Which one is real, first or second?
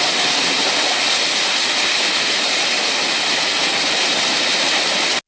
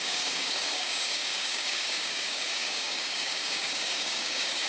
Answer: first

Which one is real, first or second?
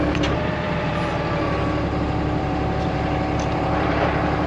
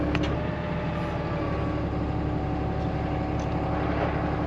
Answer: second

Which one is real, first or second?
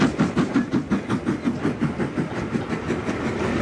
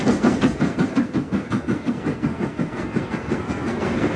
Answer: first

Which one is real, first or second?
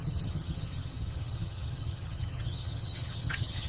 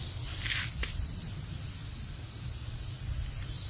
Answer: second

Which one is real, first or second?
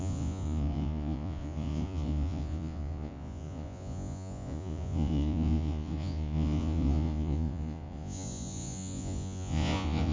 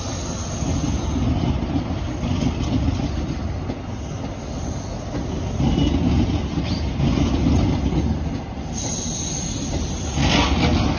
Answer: second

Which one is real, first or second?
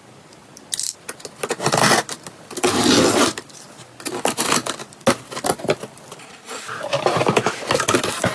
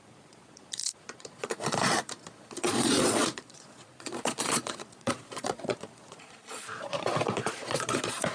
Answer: first